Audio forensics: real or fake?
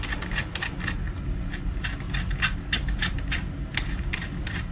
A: real